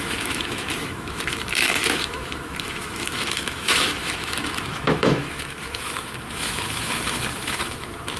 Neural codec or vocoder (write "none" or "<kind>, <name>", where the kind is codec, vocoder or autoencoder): autoencoder, DAC-VAE